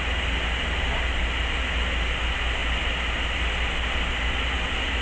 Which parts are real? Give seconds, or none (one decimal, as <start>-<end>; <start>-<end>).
0.0-5.0